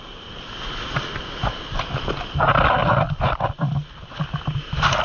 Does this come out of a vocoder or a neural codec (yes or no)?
no